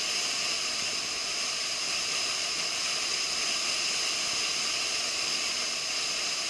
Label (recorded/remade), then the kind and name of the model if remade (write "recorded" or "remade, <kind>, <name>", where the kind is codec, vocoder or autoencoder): recorded